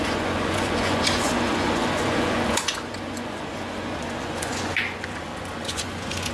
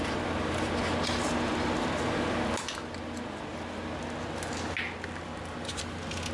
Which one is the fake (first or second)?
first